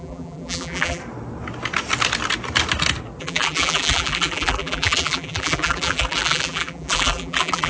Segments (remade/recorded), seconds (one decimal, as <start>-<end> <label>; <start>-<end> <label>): 0.0-1.0 remade; 1.0-3.2 recorded; 3.2-7.7 remade